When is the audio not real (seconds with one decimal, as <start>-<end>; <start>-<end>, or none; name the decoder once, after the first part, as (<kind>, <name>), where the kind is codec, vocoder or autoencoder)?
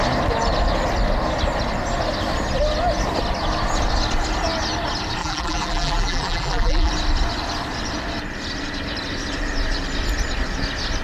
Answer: 5.2-6.9 (vocoder, BigVGAN v2)